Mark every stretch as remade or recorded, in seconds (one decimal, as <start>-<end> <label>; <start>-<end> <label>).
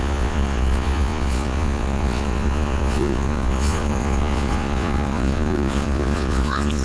0.0-6.8 remade